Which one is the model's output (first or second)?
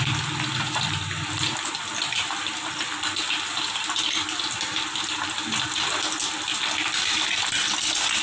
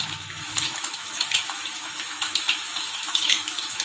second